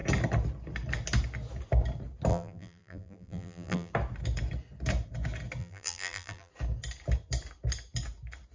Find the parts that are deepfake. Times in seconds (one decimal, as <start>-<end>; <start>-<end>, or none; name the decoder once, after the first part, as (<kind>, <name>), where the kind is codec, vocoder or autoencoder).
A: 2.3-3.9 (vocoder, BigVGAN v2); 5.6-6.5